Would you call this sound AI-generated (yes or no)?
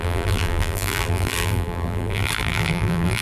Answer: yes